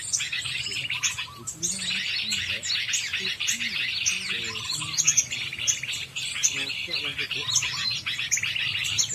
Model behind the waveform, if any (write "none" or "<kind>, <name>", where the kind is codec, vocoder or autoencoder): none